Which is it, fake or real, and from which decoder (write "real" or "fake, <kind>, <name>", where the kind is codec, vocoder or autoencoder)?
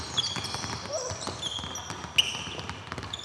real